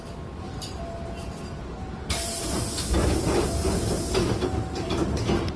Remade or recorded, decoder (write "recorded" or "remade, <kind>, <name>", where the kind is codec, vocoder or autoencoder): remade, vocoder, BigVGAN v2